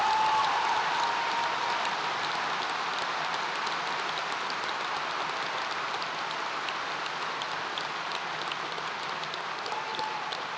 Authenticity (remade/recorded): recorded